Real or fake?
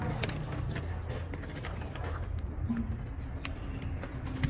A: real